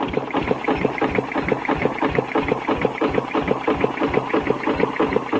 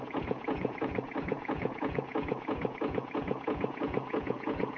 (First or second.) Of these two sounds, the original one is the first